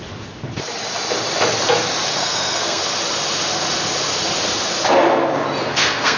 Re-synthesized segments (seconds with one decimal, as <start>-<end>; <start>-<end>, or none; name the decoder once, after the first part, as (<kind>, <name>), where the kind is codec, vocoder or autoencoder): 2.2-2.8 (codec, SNAC); 5.6-6.2